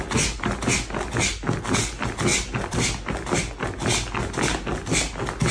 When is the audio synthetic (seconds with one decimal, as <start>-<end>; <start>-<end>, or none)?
none